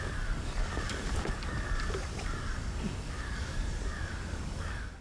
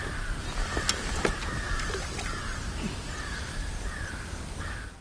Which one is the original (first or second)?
second